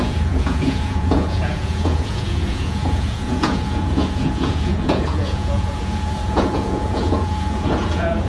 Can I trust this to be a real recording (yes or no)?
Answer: no